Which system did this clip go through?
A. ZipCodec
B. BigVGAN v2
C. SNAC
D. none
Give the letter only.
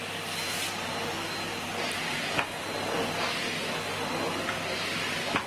D